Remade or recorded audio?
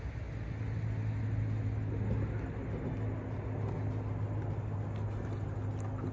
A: recorded